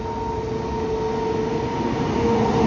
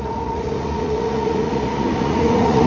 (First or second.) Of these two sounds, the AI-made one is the second